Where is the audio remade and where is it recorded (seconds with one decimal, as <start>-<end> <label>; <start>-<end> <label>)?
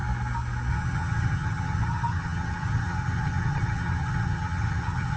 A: 0.0-0.7 recorded; 0.7-5.2 remade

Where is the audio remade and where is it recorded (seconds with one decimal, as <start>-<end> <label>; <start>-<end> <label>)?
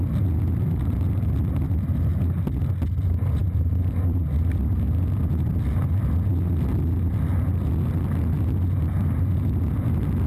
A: 0.0-10.3 recorded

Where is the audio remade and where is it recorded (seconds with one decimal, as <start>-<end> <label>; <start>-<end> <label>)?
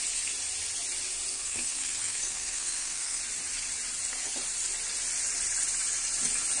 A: 0.0-1.3 recorded; 1.3-3.2 remade; 3.2-6.6 recorded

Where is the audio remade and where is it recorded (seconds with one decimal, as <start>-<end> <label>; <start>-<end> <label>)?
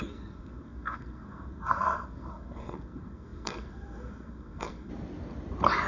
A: 0.0-4.9 remade; 4.9-5.9 recorded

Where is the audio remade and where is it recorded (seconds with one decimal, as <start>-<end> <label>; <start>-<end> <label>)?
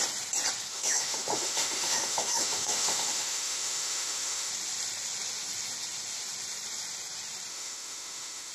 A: 0.0-0.7 recorded; 0.7-4.5 remade; 4.5-7.5 recorded; 7.5-8.5 remade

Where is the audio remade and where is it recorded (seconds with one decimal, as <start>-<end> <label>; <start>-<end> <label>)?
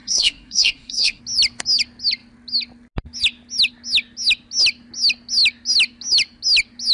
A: 0.0-1.2 remade; 1.2-6.9 recorded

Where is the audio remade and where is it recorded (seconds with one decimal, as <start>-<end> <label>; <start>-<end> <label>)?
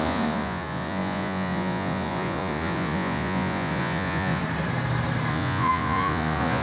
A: 0.0-4.4 remade; 4.4-5.3 recorded; 5.3-6.6 remade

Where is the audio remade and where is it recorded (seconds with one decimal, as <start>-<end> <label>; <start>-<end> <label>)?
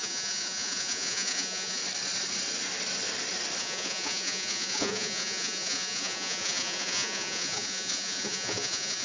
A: 0.0-1.8 remade; 1.8-3.6 recorded; 3.6-9.0 remade